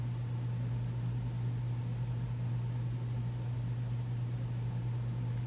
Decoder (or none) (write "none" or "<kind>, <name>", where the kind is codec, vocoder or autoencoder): none